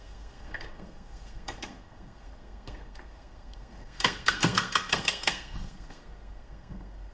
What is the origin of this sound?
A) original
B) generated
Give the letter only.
B